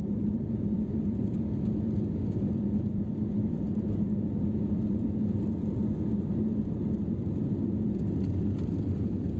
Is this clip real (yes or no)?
no